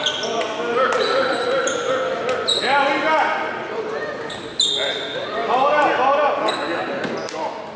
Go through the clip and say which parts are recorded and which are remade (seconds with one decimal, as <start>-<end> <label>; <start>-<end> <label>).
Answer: 0.0-7.8 recorded